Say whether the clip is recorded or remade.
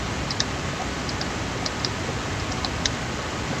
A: recorded